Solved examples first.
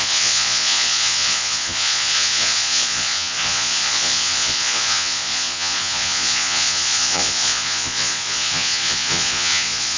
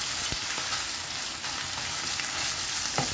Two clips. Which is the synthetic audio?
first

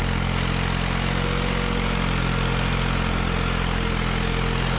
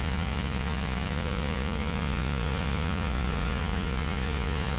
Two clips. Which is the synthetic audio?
second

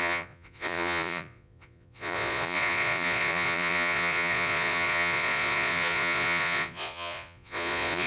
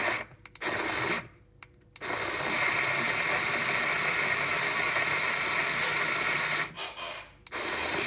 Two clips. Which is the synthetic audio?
first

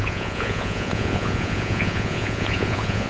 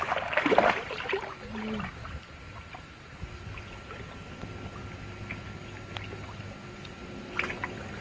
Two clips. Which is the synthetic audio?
first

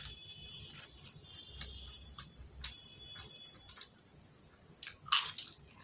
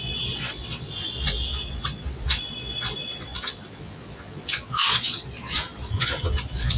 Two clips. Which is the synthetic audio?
second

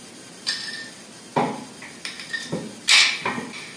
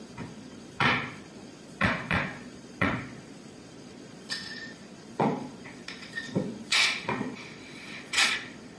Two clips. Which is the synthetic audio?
second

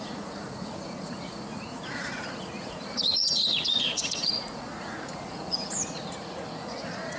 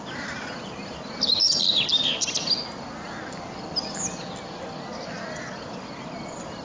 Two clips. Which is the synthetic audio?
first